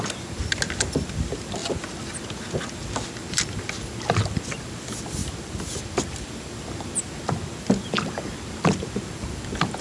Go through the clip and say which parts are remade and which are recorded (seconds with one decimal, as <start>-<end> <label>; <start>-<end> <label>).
0.0-9.8 recorded